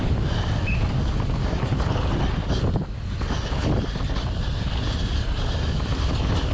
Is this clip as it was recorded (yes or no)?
yes